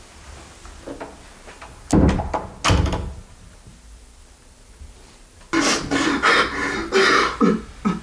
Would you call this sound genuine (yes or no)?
yes